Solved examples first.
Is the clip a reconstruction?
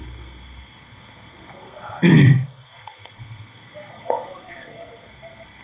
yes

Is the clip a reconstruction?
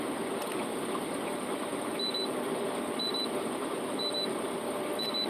no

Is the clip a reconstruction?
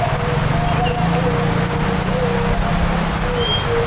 no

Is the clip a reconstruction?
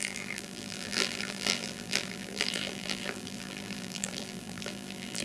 yes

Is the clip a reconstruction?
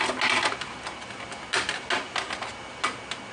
no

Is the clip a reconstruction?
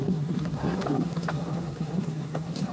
yes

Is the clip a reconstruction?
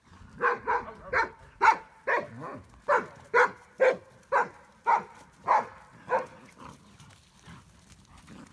no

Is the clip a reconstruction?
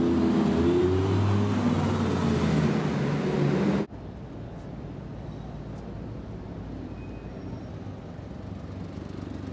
no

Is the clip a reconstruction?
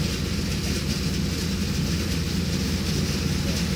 no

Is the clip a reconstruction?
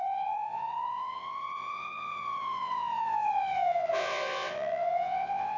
yes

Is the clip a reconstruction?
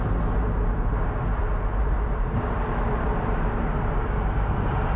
no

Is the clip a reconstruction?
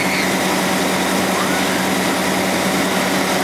no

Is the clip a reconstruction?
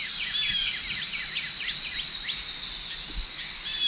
no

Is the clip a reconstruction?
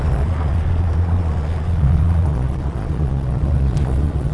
yes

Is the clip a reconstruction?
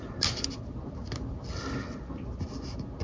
no